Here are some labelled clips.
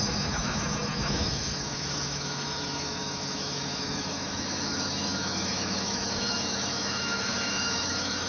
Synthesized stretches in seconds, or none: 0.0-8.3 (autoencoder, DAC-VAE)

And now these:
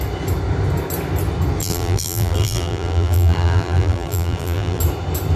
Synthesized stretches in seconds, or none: 1.6-4.8 (vocoder, BigVGAN v2)

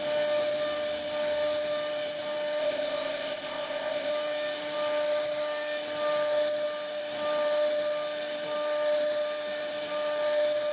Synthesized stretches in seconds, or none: 2.6-4.1 (codec, ZipCodec)

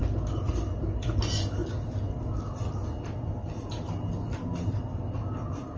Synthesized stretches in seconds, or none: none

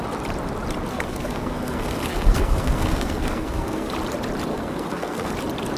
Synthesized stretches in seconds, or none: 0.9-3.9 (codec, SNAC); 4.5-5.3

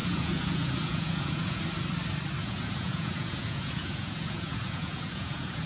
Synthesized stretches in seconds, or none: 0.0-1.6 (vocoder, Vocos); 2.4-5.7

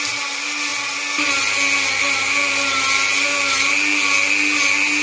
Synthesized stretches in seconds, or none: none